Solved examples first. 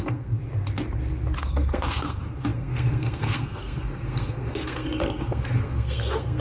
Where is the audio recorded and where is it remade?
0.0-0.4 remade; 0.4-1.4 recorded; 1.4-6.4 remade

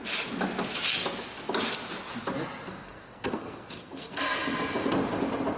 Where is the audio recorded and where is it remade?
0.0-2.7 recorded; 2.7-4.2 remade; 4.2-5.6 recorded

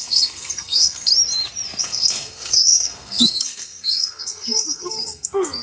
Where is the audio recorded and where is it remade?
0.0-1.1 remade; 1.1-1.8 recorded; 1.8-5.6 remade